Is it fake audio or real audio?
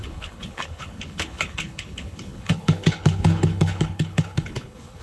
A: fake